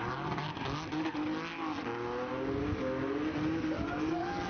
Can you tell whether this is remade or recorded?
recorded